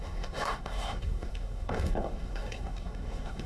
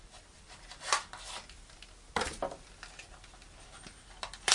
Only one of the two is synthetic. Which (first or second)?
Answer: first